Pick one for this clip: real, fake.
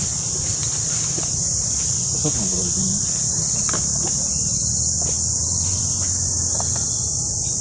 real